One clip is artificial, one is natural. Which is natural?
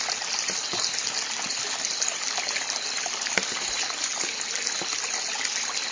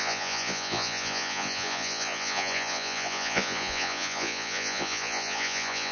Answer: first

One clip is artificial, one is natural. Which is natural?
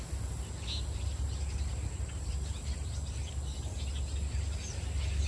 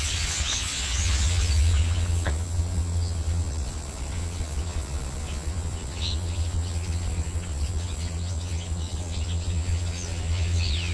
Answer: first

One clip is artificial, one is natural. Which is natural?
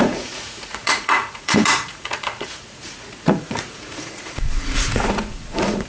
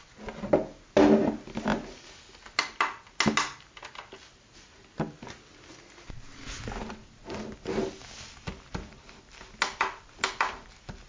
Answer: second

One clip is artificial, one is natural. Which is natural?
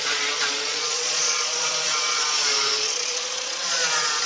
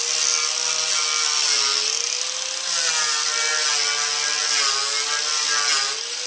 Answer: second